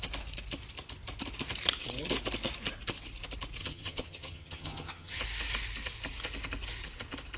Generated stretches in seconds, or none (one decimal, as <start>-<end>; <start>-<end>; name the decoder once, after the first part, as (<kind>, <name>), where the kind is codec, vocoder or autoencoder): 3.6-5.2 (vocoder, HiFi-GAN)